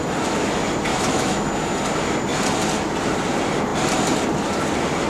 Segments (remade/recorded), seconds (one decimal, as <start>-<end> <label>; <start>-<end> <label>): 0.0-0.9 recorded; 0.9-1.5 remade; 1.5-5.1 recorded